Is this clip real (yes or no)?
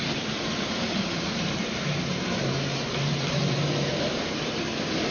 no